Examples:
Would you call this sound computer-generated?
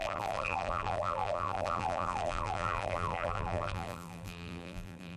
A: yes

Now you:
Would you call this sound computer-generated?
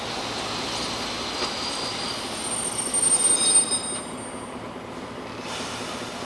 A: no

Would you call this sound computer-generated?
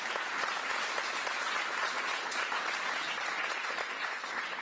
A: no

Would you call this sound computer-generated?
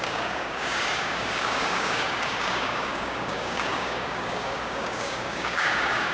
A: yes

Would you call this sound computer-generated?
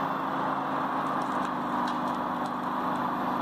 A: no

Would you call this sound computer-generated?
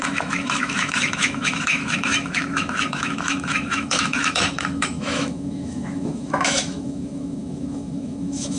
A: yes